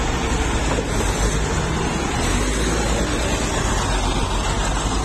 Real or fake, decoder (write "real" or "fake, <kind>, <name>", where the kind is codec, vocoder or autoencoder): real